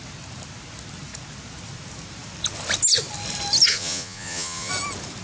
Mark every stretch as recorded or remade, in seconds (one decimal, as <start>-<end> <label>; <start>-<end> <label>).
0.0-3.7 recorded; 3.7-4.7 remade; 4.7-5.2 recorded